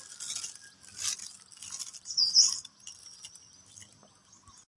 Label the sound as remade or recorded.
recorded